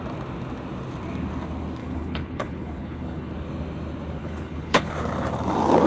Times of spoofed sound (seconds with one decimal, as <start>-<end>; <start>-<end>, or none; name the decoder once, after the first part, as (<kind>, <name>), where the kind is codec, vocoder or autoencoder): 1.8-3.3 (codec, HILCodec); 4.2-4.9

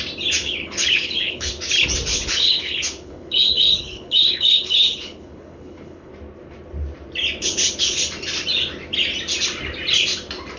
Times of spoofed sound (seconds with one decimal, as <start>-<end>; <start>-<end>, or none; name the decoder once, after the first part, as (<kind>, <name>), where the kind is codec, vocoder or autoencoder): 0.4-1.5 (codec, HILCodec); 2.1-6.1; 7.4-8.0

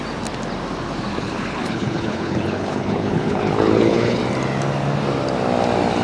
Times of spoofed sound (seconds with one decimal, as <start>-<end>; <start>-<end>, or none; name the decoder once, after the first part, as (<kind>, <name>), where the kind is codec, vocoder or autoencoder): 1.2-4.2 (codec, HILCodec)

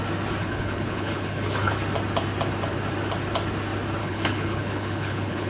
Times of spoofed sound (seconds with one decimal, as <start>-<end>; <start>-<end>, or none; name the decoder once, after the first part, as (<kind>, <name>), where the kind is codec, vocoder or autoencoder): 0.4-1.7 (codec, HILCodec); 4.0-5.5

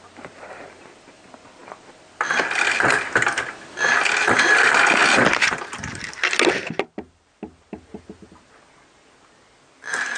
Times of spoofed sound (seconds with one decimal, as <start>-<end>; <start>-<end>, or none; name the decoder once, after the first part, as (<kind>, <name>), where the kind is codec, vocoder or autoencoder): none